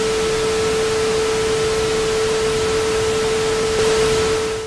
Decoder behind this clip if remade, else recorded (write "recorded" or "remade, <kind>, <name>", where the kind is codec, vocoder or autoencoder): recorded